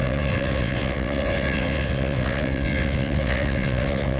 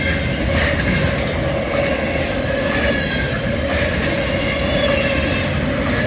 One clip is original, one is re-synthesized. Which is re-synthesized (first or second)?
first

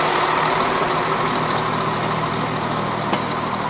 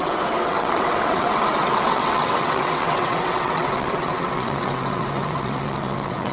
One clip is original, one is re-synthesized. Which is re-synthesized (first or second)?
second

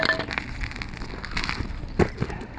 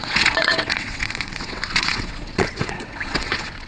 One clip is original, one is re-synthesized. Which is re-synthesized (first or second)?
second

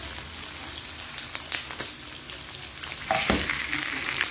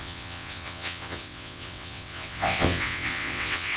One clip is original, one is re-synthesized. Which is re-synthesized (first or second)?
second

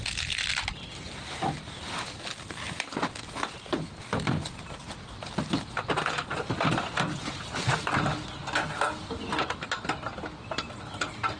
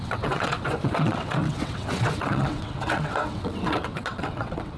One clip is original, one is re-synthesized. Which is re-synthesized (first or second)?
second